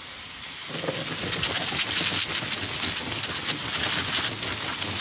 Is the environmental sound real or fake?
real